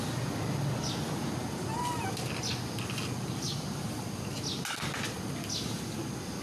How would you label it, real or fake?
real